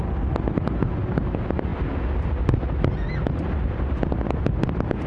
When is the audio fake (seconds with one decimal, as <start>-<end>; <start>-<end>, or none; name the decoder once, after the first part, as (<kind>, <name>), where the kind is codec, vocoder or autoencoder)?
none